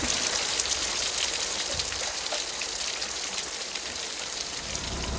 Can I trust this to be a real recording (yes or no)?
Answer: no